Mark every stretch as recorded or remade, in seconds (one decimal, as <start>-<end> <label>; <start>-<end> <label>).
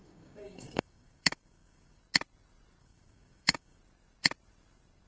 0.0-2.0 remade; 2.0-2.8 recorded; 2.8-3.8 remade; 3.8-5.1 recorded